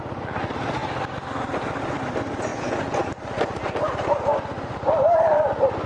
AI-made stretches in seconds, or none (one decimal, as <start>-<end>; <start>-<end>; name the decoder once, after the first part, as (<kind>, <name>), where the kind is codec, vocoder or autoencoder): 2.5-3.1 (vocoder, Vocos)